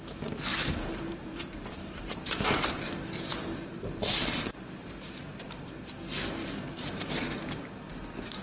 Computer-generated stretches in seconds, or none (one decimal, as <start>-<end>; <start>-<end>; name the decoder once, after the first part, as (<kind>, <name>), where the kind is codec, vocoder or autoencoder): 0.5-3.2 (vocoder, BigVGAN v2); 3.7-5.9; 6.4-7.1